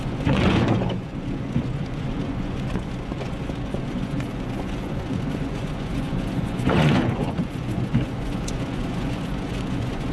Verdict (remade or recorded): remade